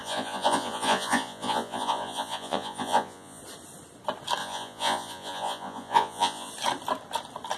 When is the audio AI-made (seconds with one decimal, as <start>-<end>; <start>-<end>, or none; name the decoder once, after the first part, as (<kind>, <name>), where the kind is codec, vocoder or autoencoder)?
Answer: 0.0-3.4 (vocoder, Vocos); 4.4-6.5

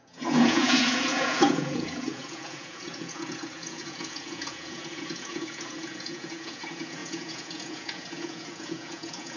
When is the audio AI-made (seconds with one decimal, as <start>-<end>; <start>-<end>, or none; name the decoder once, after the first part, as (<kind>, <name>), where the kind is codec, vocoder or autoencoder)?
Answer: 0.0-9.4 (vocoder, Vocos)

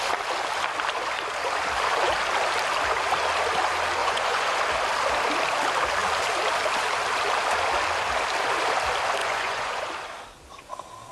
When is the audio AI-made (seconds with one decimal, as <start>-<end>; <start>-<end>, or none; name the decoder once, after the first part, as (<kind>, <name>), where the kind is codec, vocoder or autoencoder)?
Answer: 4.0-4.6 (vocoder, Vocos); 9.2-9.9

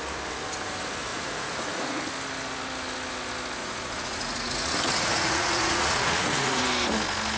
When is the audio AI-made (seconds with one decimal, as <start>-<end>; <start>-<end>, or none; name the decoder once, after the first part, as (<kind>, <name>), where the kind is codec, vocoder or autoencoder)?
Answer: 1.1-2.0 (vocoder, Vocos); 3.6-6.6

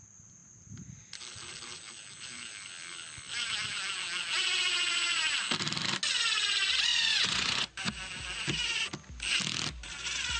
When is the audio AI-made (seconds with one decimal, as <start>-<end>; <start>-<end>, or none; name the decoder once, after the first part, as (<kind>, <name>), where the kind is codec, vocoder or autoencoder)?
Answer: 6.9-7.9 (vocoder, Vocos)

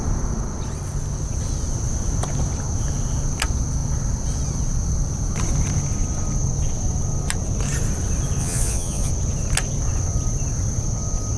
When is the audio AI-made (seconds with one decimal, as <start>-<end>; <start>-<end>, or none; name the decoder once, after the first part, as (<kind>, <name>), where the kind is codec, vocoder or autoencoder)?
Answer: 8.4-9.1 (vocoder, Vocos)

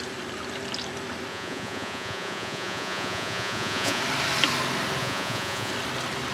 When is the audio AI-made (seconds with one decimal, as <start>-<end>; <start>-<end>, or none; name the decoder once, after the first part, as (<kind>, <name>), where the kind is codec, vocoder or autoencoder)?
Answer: 1.3-4.0 (vocoder, Vocos); 5.0-5.7

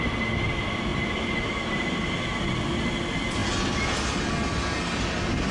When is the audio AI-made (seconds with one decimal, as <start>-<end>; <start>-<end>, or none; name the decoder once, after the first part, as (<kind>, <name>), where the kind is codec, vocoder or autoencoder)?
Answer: none